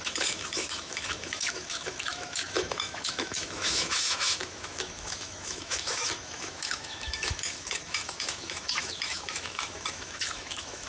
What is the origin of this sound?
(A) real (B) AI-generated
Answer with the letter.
B